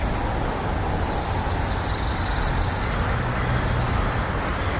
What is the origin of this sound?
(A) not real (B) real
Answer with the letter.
B